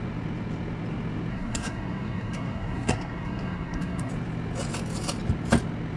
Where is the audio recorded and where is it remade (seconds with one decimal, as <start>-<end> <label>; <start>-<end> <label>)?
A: 0.0-1.3 recorded; 1.3-4.1 remade; 4.1-6.0 recorded